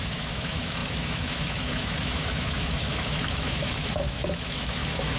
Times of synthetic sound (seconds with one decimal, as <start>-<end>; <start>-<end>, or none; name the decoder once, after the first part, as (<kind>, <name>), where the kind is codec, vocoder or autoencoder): 0.0-5.2 (autoencoder, DAC-VAE)